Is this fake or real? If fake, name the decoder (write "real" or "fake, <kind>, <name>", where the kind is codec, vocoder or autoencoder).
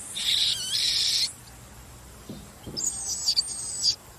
real